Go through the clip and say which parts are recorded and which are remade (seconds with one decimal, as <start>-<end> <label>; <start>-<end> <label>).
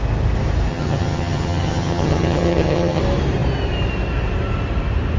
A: 0.0-0.7 recorded; 0.7-3.0 remade; 3.0-5.2 recorded